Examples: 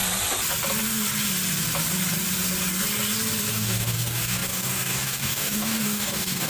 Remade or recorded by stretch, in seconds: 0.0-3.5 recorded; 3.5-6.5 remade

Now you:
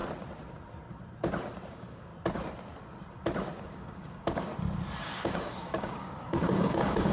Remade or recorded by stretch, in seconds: 0.0-1.7 recorded; 1.7-2.1 remade; 2.1-3.6 recorded; 3.6-4.5 remade; 4.5-5.0 recorded; 5.0-7.1 remade

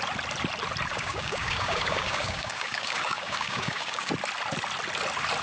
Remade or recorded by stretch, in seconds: 0.0-0.9 recorded; 0.9-4.1 remade; 4.1-5.4 recorded

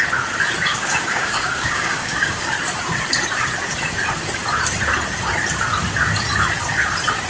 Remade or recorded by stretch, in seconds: 0.0-0.7 recorded; 0.7-2.5 remade; 2.5-7.3 recorded

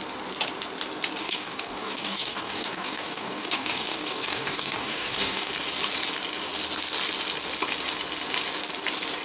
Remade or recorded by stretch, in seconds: 0.0-1.2 recorded; 1.2-5.5 remade; 5.5-9.2 recorded